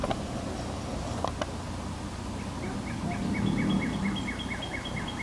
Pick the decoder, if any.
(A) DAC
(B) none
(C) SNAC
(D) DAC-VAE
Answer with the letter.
B